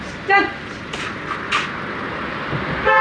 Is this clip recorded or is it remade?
recorded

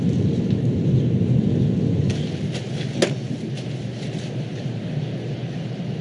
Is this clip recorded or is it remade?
recorded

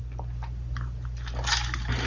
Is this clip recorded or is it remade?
recorded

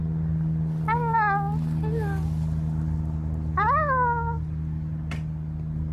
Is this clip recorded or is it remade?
recorded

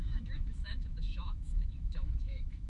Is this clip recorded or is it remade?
remade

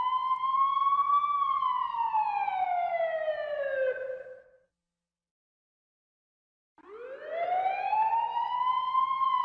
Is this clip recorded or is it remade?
recorded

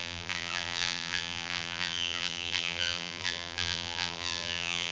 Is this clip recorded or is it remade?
remade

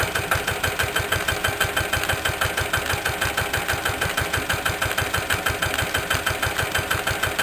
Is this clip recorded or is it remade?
recorded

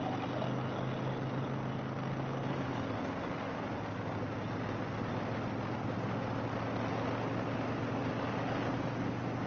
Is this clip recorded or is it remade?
recorded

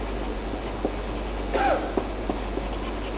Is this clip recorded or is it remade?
recorded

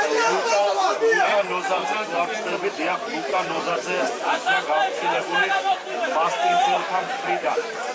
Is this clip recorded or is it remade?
remade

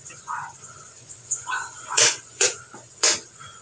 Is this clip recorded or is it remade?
remade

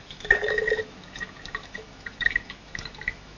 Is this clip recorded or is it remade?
remade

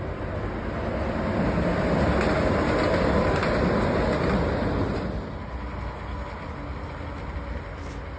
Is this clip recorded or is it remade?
recorded